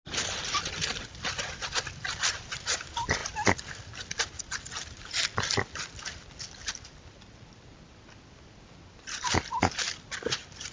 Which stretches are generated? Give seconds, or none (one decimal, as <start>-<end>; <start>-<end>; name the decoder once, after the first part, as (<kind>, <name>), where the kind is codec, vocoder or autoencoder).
none